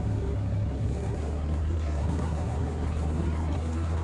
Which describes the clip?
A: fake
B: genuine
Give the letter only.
A